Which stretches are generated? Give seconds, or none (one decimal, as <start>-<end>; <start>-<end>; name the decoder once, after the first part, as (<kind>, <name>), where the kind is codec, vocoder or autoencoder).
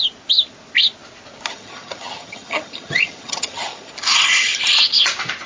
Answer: 1.5-3.9 (vocoder, HiFi-GAN)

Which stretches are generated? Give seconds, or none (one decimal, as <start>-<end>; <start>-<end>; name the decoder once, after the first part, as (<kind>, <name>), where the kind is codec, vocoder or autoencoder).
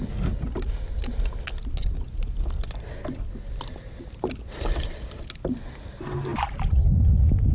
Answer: none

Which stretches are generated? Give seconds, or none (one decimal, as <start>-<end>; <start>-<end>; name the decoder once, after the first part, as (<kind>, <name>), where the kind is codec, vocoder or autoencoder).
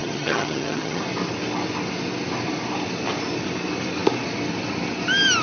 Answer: 0.0-1.0 (vocoder, HiFi-GAN)